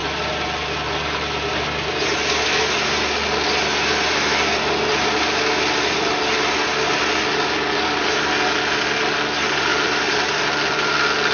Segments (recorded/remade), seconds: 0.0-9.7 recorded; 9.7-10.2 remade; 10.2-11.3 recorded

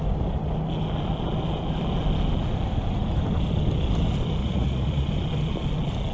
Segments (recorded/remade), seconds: 0.0-4.4 recorded; 4.4-5.1 remade; 5.1-6.1 recorded

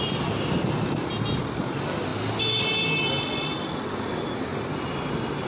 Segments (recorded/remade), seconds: 0.0-5.5 recorded

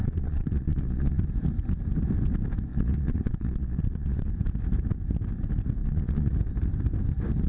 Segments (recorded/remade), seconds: 0.0-1.3 remade; 1.3-2.7 recorded; 2.7-4.3 remade; 4.3-5.8 recorded; 5.8-6.3 remade; 6.3-7.5 recorded

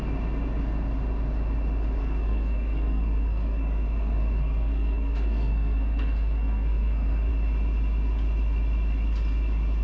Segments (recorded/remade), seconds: 0.0-2.0 recorded; 2.0-7.3 remade; 7.3-9.8 recorded

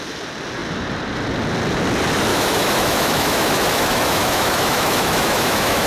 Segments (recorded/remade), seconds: 0.0-2.3 recorded; 2.3-5.9 remade

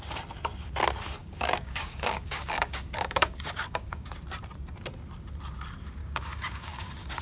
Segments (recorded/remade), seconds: 0.0-1.2 recorded; 1.2-4.1 remade; 4.1-6.0 recorded; 6.0-7.2 remade